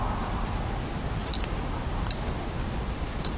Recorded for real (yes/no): yes